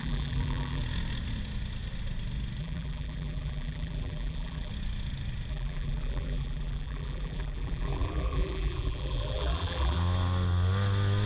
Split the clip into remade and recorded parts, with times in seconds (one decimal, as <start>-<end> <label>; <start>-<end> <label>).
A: 0.0-0.8 remade; 0.8-2.6 recorded; 2.6-4.7 remade; 4.7-5.5 recorded; 5.5-10.0 remade; 10.0-11.3 recorded

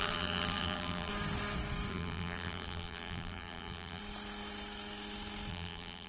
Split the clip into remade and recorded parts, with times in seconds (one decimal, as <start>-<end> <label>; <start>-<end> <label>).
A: 0.0-1.1 remade; 1.1-1.9 recorded; 1.9-4.0 remade; 4.0-5.5 recorded; 5.5-6.1 remade

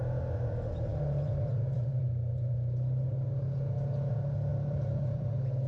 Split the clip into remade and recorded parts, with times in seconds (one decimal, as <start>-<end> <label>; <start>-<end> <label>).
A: 0.0-0.9 recorded; 0.9-2.0 remade; 2.0-4.5 recorded; 4.5-5.3 remade; 5.3-5.7 recorded

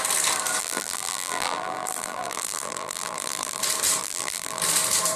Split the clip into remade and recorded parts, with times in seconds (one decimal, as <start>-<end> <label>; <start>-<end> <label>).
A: 0.0-0.6 recorded; 0.6-3.6 remade; 3.6-4.0 recorded; 4.0-4.6 remade; 4.6-5.2 recorded

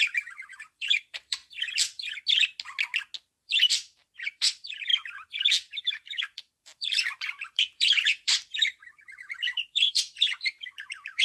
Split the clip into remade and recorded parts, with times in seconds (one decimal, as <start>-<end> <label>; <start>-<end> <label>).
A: 0.0-1.4 remade; 1.4-3.4 recorded; 3.4-4.9 remade; 4.9-5.7 recorded; 5.7-11.2 remade

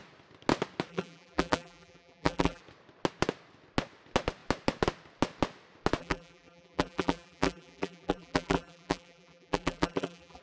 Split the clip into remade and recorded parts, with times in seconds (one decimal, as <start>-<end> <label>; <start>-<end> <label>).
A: 0.0-0.9 recorded; 0.9-2.6 remade; 2.6-6.0 recorded; 6.0-10.4 remade